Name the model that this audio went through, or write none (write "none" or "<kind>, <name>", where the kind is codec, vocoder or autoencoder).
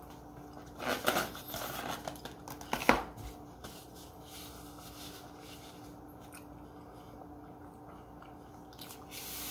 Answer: none